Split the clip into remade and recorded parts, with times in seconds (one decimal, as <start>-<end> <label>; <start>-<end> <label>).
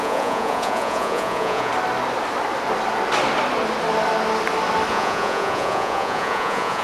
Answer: 0.0-1.7 remade; 1.7-4.9 recorded; 4.9-6.8 remade